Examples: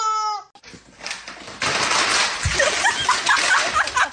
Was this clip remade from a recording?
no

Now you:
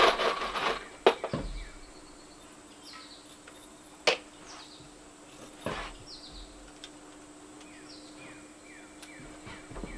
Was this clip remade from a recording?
no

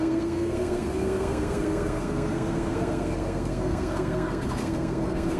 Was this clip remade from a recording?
yes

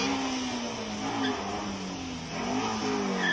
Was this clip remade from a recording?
no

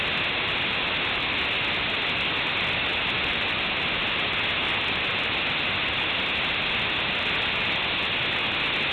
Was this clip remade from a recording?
no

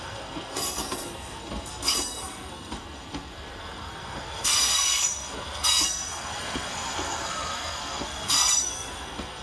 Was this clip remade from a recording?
yes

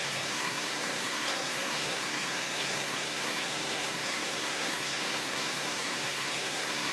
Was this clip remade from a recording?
yes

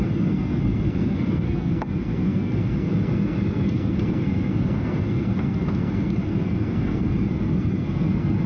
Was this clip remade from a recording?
yes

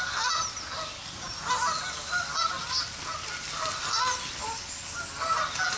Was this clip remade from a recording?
no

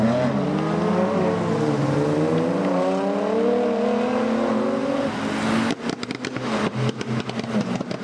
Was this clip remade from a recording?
no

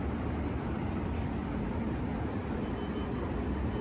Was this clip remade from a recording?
no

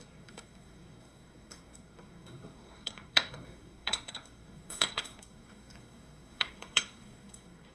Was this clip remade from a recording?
yes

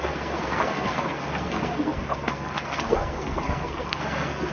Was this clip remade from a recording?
yes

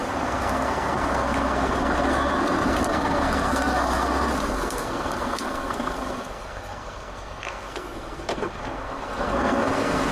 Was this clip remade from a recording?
yes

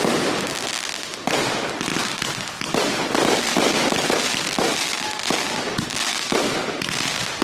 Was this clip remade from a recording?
no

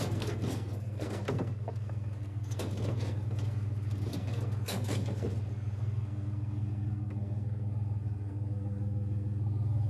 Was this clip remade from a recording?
yes